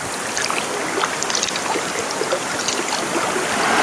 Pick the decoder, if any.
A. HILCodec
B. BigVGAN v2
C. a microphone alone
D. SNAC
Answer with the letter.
B